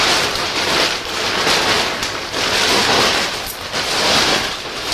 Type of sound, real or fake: real